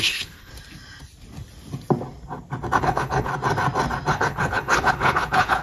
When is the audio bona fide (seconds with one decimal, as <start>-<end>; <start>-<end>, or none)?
0.5-2.8; 3.3-4.1